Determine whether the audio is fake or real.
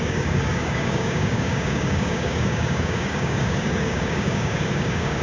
fake